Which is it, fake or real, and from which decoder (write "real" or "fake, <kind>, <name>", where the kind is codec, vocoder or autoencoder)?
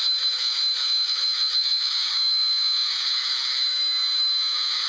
fake, autoencoder, DAC-VAE